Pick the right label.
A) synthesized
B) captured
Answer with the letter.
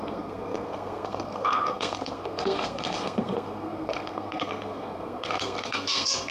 A